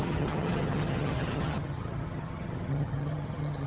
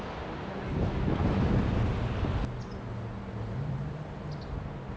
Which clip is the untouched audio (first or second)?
second